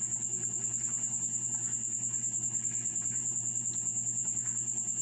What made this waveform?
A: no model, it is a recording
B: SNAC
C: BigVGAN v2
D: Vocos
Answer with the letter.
A